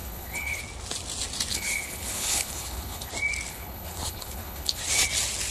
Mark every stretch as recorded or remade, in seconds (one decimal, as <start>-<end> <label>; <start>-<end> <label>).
0.0-0.6 remade; 0.6-1.5 recorded; 1.5-3.1 remade; 3.1-3.5 recorded; 3.5-4.8 remade; 4.8-5.5 recorded